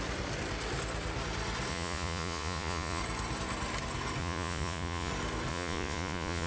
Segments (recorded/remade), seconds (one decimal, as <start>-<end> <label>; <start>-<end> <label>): 0.0-1.7 recorded; 1.7-3.0 remade; 3.0-4.2 recorded; 4.2-5.1 remade; 5.1-5.5 recorded; 5.5-6.5 remade